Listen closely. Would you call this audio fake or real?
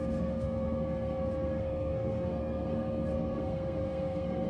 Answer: fake